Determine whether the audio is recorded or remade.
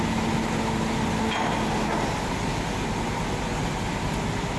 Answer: recorded